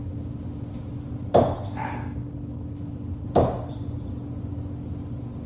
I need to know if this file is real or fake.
real